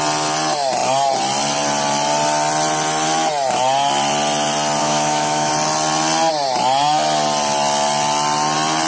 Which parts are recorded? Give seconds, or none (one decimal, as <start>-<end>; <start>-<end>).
0.0-4.8; 5.5-8.9